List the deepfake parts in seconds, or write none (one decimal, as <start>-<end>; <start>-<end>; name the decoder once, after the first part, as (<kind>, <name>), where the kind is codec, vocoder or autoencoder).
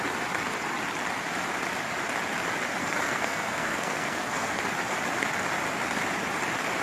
2.8-4.6 (codec, SNAC)